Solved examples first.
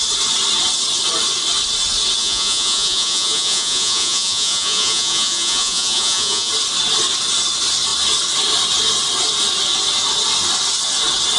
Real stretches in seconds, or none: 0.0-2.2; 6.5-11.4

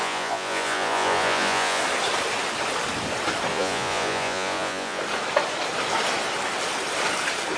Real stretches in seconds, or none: 1.8-3.5; 5.0-7.6